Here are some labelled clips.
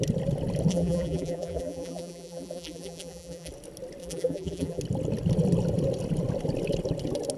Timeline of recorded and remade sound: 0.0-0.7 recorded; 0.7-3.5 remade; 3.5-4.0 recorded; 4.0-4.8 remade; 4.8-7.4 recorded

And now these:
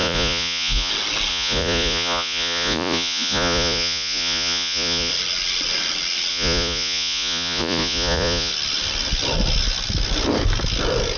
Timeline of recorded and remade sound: 0.0-0.9 remade; 0.9-1.3 recorded; 1.3-5.1 remade; 5.1-6.3 recorded; 6.3-8.5 remade; 8.5-11.2 recorded

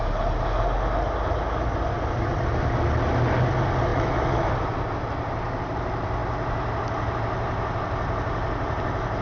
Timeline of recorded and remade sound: 0.0-3.9 recorded; 3.9-4.5 remade; 4.5-9.2 recorded

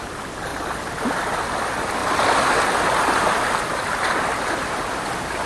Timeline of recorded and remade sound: 0.0-5.5 recorded